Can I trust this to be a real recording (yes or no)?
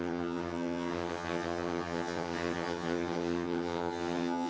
no